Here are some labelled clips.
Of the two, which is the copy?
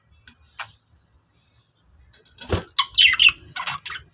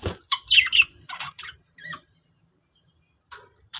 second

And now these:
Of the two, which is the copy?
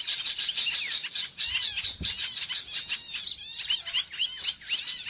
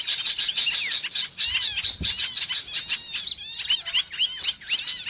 first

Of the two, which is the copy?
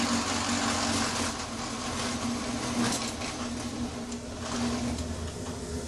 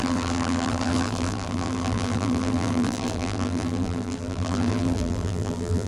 second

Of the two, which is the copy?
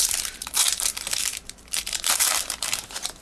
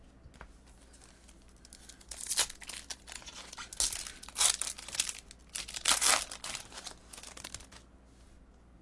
first